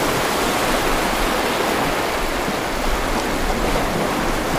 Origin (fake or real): real